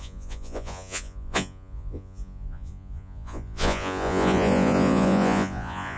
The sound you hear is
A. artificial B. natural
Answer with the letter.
A